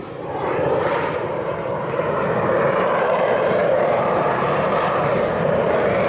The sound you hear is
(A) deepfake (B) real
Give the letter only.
A